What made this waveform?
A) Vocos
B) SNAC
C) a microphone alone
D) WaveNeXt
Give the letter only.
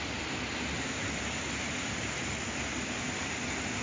C